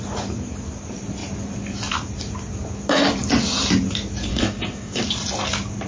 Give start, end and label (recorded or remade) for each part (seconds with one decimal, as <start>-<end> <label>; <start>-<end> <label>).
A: 0.0-4.3 recorded; 4.3-5.0 remade; 5.0-5.9 recorded